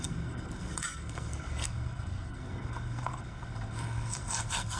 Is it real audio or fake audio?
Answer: fake